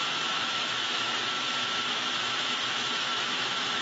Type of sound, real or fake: fake